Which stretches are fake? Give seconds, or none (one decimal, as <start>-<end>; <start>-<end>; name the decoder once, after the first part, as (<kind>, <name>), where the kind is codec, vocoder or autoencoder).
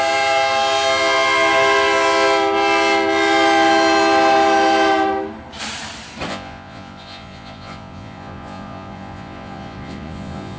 6.3-10.6 (vocoder, Vocos)